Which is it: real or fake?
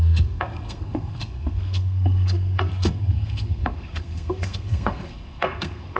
fake